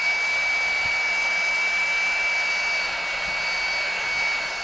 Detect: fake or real real